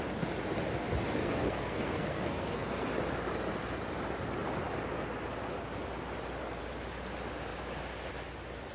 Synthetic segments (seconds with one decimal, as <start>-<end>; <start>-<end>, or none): 1.2-2.9